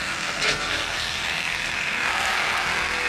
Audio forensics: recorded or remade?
remade